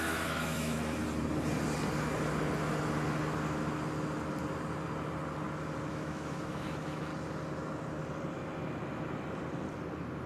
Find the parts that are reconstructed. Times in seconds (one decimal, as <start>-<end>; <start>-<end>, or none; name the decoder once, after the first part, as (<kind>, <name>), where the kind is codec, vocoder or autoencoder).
0.0-1.0 (autoencoder, DAC-VAE); 5.9-7.1